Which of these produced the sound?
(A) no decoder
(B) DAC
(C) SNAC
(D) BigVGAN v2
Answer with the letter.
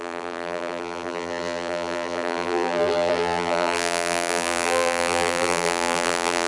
D